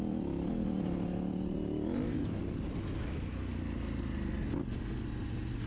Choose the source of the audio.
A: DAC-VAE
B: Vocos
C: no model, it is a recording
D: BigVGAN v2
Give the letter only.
C